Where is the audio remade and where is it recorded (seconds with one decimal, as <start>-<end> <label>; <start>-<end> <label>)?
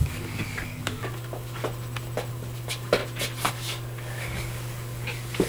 0.0-1.6 remade; 1.6-2.3 recorded; 2.3-3.0 remade; 3.0-3.5 recorded; 3.5-5.5 remade